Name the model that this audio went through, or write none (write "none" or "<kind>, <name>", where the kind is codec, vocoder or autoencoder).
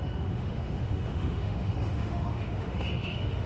autoencoder, DAC-VAE